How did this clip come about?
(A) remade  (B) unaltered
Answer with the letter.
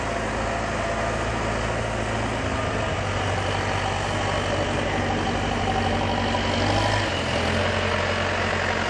B